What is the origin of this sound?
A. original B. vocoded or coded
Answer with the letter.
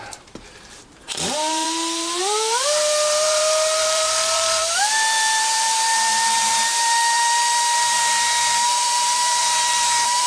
B